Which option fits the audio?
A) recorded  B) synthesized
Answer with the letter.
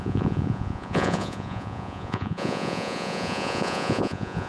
B